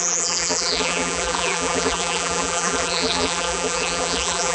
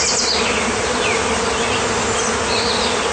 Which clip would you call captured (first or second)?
second